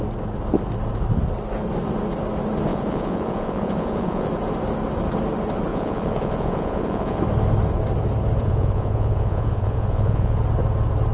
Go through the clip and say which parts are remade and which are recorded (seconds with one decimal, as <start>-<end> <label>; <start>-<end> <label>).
0.0-2.7 recorded; 2.7-4.3 remade; 4.3-5.7 recorded; 5.7-7.2 remade; 7.2-8.4 recorded; 8.4-10.4 remade; 10.4-11.1 recorded